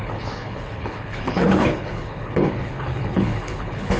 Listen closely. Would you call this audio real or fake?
fake